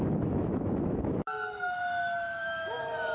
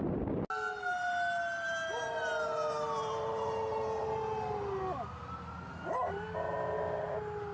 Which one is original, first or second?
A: second